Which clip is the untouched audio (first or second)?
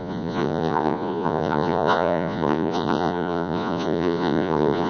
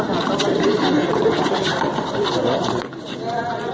second